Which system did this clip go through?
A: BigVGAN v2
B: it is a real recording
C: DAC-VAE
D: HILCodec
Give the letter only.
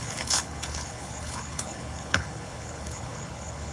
D